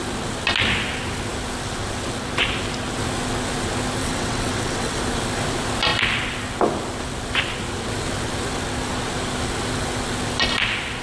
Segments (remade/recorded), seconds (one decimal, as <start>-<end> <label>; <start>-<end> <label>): 0.0-4.0 recorded; 4.0-5.0 remade; 5.0-11.0 recorded